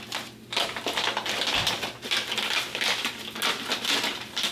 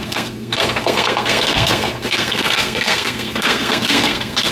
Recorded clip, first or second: first